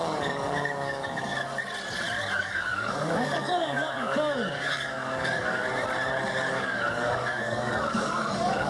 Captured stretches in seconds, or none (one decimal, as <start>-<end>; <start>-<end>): 1.3-2.4; 5.6-6.5